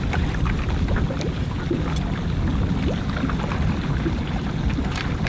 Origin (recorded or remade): recorded